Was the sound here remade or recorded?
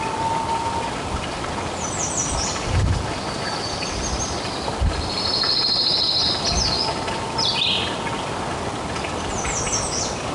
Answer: recorded